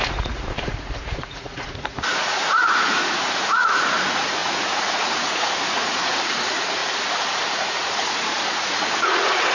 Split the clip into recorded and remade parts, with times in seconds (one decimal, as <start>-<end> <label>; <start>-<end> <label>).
0.0-6.8 remade; 6.8-7.5 recorded; 7.5-9.5 remade